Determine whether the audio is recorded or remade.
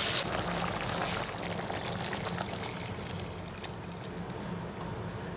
recorded